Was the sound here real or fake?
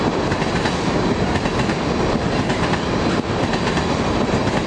real